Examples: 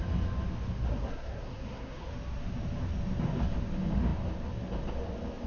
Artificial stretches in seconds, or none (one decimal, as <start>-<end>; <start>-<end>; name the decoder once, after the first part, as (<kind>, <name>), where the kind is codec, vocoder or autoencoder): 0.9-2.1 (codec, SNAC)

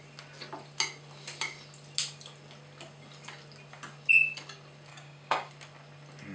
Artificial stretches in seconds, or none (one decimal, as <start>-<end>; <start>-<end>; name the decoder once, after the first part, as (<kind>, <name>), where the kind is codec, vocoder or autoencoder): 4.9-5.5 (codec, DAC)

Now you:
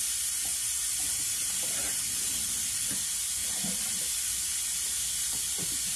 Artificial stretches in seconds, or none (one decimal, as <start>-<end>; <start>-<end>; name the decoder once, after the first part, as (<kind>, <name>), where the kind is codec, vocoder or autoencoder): 2.3-2.9 (vocoder, BigVGAN v2); 3.4-6.0

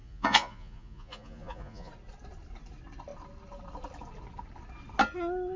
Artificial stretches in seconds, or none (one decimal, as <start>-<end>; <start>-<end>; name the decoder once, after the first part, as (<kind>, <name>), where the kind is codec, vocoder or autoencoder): 0.0-1.9 (vocoder, Vocos)

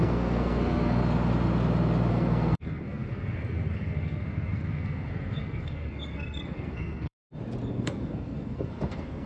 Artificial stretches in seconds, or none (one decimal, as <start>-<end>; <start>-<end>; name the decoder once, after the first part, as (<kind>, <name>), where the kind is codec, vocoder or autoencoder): 0.0-1.0 (codec, SNAC); 2.1-7.2; 7.7-9.3

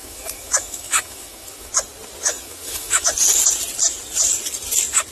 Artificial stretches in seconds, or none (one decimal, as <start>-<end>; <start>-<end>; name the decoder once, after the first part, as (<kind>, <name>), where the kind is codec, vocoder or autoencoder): 0.0-1.7 (autoencoder, DAC-VAE); 2.3-3.1